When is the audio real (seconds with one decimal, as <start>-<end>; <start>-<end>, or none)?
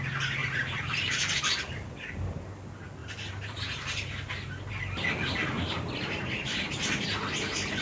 0.0-0.4; 1.4-3.0; 4.7-5.4; 7.3-7.8